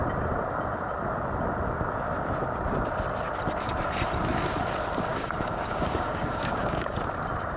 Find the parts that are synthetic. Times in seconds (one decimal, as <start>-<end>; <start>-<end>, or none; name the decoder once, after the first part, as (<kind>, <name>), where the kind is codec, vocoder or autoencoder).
5.1-7.0 (codec, DAC)